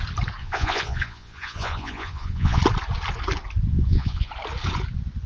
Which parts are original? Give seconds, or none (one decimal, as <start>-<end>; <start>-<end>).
0.0-0.4; 2.6-3.7; 4.3-5.3